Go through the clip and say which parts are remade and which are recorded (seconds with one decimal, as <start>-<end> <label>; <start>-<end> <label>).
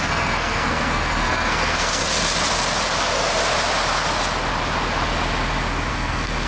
0.0-2.0 remade; 2.0-5.9 recorded; 5.9-6.5 remade